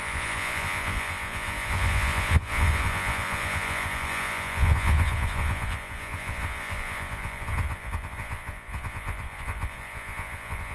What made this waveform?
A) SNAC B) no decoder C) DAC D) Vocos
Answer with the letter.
D